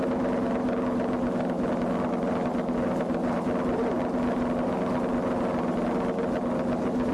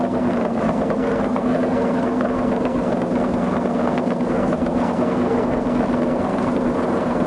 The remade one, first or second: second